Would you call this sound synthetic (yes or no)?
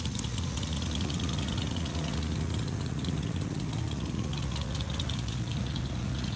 yes